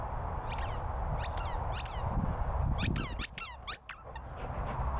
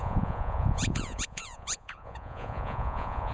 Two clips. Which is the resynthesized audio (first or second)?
second